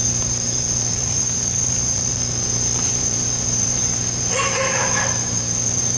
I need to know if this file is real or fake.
fake